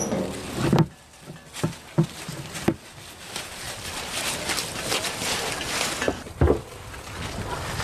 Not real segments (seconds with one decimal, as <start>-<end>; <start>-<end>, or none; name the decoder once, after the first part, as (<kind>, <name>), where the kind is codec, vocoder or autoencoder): none